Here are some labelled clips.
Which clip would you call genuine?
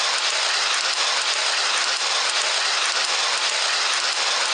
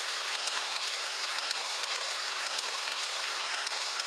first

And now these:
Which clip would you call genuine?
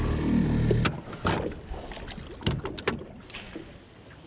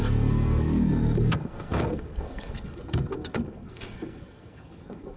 first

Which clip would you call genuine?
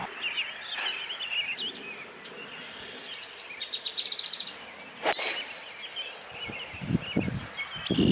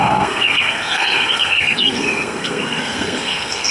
first